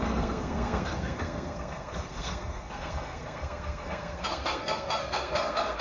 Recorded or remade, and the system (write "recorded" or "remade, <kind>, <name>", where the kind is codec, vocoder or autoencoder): remade, codec, SNAC